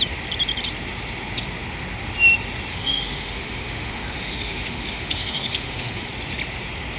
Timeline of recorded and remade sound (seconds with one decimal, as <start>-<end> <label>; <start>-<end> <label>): 0.0-2.7 recorded; 2.7-6.1 remade; 6.1-7.0 recorded